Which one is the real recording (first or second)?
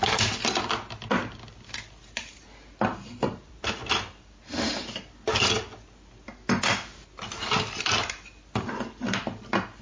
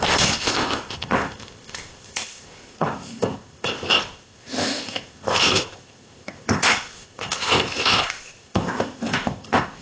first